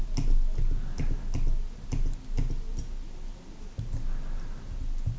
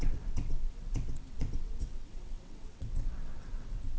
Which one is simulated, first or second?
second